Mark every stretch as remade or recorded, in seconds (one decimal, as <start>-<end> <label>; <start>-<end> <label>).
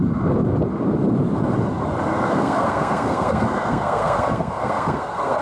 0.0-2.1 recorded; 2.1-5.4 remade